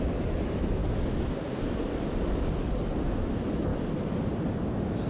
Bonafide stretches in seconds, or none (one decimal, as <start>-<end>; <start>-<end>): 0.8-3.3; 3.7-5.1